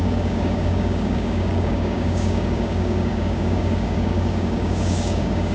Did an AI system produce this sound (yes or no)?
yes